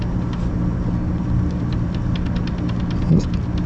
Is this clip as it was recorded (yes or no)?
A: yes